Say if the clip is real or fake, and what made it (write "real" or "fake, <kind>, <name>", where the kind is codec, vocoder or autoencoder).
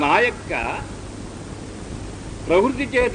real